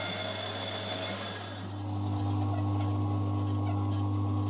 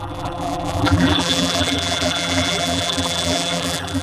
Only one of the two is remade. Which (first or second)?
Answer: second